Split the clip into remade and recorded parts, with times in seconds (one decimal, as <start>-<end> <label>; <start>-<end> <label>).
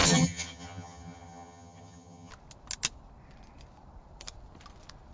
0.0-2.3 remade; 2.3-5.1 recorded